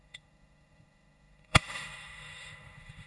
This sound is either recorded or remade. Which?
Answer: remade